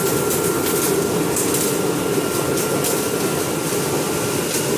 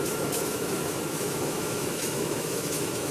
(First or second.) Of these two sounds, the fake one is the second